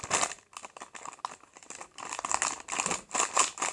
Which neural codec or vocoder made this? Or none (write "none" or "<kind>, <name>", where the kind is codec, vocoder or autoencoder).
none